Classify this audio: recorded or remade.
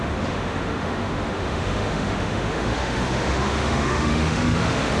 remade